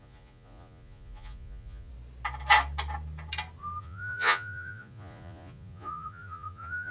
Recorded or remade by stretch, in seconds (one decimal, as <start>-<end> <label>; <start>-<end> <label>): 0.0-1.9 remade; 1.9-3.8 recorded; 3.8-6.9 remade